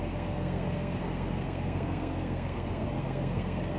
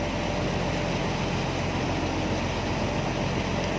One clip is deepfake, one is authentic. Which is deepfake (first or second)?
first